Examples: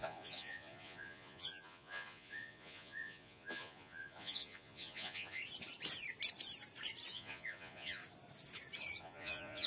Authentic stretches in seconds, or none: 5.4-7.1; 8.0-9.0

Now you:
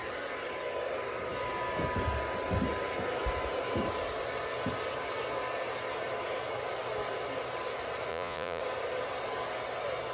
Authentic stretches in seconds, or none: 0.0-8.1; 8.6-10.1

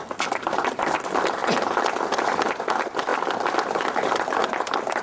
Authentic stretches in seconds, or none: 0.0-5.0

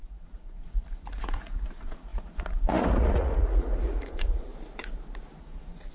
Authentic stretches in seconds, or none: 4.5-5.4

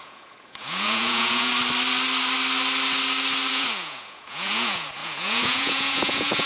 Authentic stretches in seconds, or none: 1.5-3.5

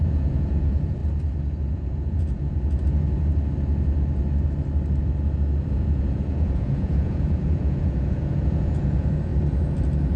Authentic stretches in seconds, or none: 1.0-1.7; 3.3-5.6; 9.3-10.2